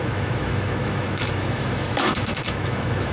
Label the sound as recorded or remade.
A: remade